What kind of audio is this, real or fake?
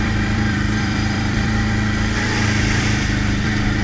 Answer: fake